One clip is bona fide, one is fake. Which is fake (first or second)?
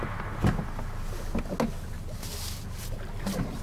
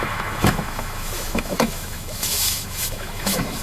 second